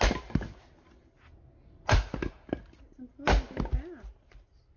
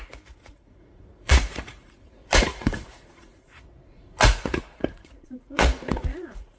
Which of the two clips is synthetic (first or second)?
second